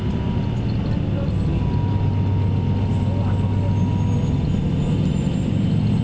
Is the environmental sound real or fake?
real